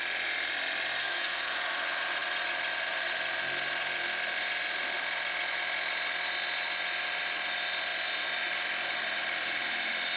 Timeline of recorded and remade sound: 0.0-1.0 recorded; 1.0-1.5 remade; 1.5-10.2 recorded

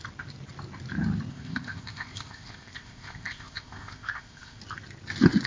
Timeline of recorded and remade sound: 0.0-1.3 recorded; 1.3-4.6 remade; 4.6-5.5 recorded

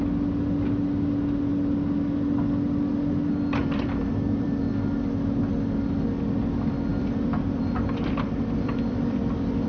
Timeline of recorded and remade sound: 0.0-3.6 recorded; 3.6-4.6 remade; 4.6-6.9 recorded; 6.9-9.7 remade

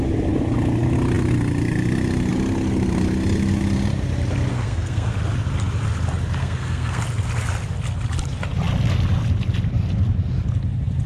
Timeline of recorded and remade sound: 0.0-4.5 recorded; 4.5-5.1 remade; 5.1-6.4 recorded; 6.4-7.0 remade; 7.0-11.1 recorded